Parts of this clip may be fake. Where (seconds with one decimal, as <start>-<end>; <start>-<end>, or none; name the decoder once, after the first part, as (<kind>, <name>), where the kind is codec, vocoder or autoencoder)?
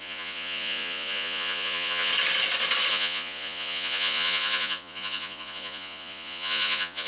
0.0-2.1 (vocoder, Vocos); 2.9-7.1